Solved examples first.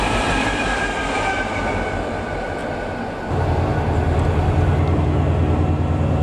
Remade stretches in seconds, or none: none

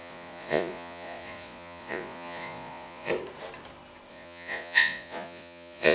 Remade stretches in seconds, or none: 0.0-3.1 (vocoder, Vocos); 4.1-5.9

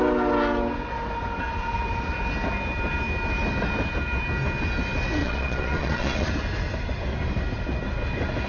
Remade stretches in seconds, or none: 5.2-6.3 (vocoder, Vocos)

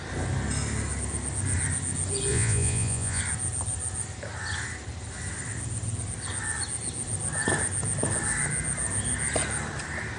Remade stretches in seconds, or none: 2.3-3.2 (vocoder, Vocos)